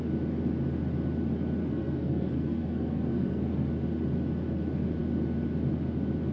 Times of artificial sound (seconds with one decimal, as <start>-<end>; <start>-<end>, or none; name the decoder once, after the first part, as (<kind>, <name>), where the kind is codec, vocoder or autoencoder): 1.6-3.7 (codec, SNAC)